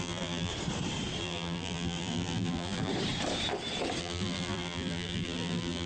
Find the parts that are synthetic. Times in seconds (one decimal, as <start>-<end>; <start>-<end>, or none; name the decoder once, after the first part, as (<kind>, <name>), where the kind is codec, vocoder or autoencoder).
0.0-0.5 (vocoder, BigVGAN v2); 1.2-2.9; 4.0-5.9